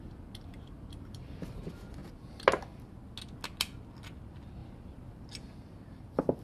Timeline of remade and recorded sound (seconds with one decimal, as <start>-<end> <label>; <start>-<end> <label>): 0.0-6.4 recorded